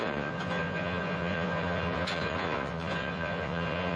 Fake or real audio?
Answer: fake